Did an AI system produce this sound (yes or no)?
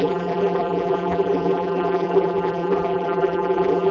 yes